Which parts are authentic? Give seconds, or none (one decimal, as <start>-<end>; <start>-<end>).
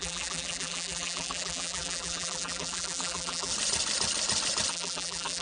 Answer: 3.5-4.7